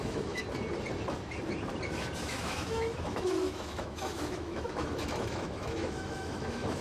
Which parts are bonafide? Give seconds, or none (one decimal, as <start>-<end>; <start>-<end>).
0.4-2.2